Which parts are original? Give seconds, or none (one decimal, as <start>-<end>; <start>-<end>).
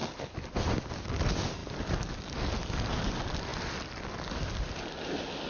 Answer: 0.0-5.5